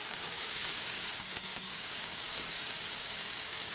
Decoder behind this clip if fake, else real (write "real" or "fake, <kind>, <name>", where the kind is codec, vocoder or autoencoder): fake, codec, DAC